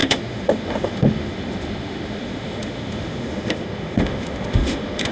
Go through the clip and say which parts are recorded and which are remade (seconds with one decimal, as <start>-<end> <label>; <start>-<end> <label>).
0.0-5.1 remade